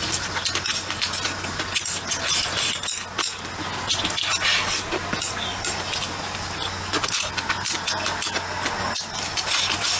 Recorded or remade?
recorded